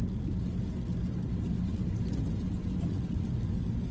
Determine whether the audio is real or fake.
real